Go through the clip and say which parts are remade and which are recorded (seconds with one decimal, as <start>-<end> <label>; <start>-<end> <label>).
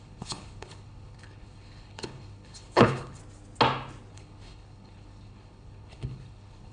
0.0-3.2 remade; 3.2-4.1 recorded; 4.1-6.7 remade